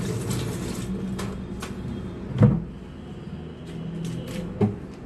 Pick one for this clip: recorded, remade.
recorded